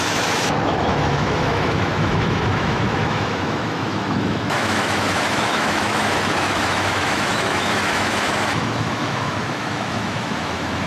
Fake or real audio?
fake